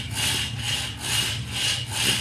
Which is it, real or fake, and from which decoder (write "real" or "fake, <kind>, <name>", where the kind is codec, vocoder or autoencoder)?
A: real